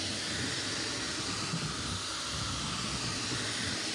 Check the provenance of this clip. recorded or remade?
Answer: recorded